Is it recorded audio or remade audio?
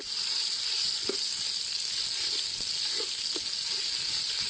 recorded